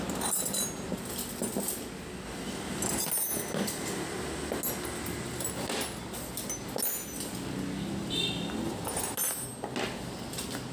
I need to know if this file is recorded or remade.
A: recorded